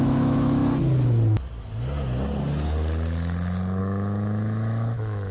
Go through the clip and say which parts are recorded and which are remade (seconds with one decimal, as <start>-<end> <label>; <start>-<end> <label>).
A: 0.0-0.6 remade; 0.6-3.8 recorded; 3.8-5.3 remade